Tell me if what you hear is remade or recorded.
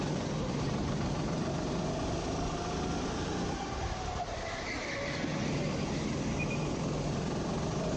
recorded